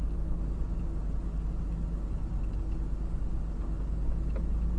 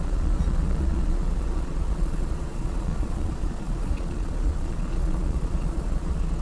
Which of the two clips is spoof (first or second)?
second